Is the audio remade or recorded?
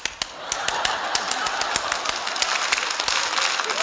recorded